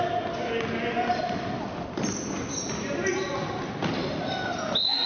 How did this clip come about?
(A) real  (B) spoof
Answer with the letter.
A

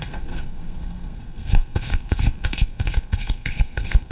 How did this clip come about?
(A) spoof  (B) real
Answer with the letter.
A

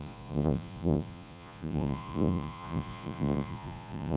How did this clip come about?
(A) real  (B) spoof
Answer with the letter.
B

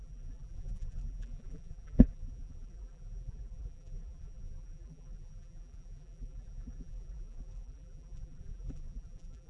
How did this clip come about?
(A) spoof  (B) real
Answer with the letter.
A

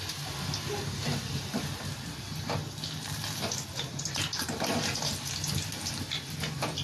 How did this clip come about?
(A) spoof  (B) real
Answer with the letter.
B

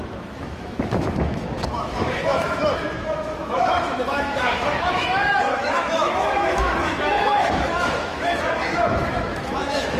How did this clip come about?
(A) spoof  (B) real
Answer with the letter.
A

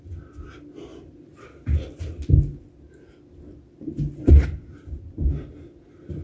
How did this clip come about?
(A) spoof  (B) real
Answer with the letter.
B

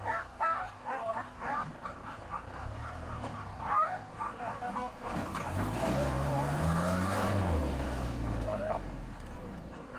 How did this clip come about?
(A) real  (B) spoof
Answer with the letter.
B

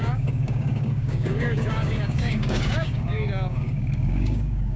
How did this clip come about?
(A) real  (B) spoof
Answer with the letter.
B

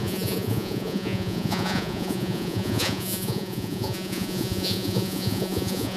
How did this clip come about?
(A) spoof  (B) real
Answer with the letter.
A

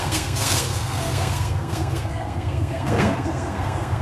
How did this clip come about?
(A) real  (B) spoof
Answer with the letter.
B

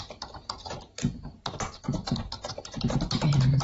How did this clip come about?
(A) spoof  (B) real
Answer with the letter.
A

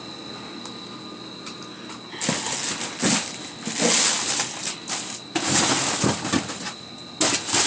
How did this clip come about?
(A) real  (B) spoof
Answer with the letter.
A